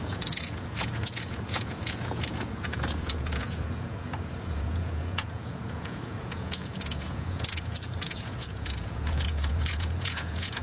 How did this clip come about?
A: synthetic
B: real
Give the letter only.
A